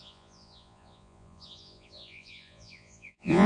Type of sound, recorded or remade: remade